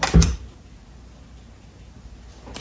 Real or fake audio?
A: real